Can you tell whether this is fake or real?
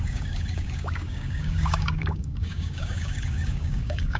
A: fake